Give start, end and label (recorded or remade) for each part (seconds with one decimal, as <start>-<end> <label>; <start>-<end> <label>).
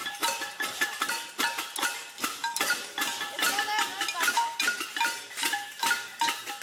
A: 0.0-1.3 remade; 1.3-2.0 recorded; 2.0-3.2 remade; 3.2-3.9 recorded; 3.9-4.8 remade; 4.8-6.6 recorded